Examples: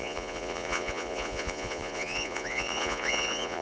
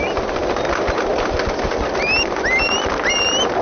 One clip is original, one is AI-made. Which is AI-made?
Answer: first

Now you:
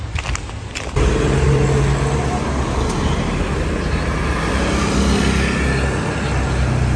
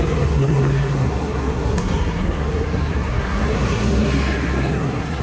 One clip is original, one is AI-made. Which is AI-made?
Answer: second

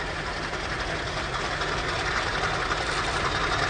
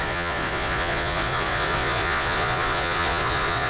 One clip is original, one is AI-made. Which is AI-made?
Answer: second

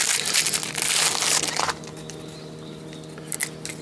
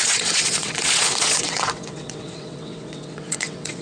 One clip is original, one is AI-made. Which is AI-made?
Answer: second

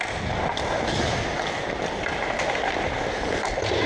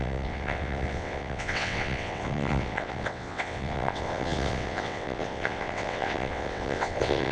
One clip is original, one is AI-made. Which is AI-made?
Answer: second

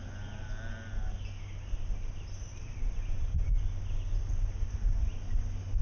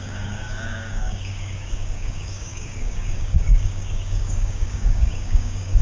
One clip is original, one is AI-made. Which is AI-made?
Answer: second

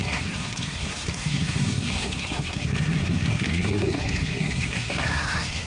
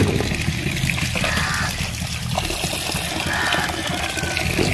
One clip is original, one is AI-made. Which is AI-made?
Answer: first